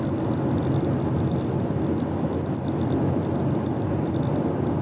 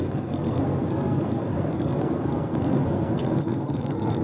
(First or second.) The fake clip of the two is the second